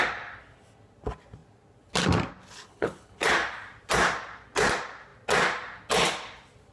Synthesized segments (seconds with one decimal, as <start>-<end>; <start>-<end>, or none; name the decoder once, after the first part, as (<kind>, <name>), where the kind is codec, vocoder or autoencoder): 2.7-3.3 (codec, HILCodec)